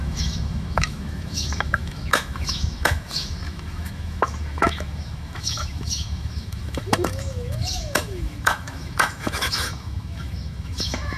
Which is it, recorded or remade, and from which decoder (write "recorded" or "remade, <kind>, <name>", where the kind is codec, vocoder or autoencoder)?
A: remade, autoencoder, DAC-VAE